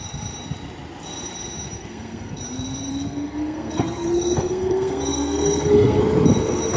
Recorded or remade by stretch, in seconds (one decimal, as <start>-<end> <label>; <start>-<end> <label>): 0.0-1.8 recorded; 1.8-2.4 remade; 2.4-2.9 recorded; 2.9-6.0 remade; 6.0-6.8 recorded